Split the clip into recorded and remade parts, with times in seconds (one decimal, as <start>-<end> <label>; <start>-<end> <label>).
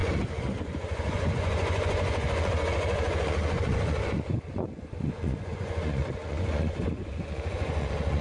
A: 0.0-8.2 remade